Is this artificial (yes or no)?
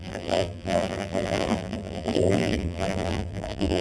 yes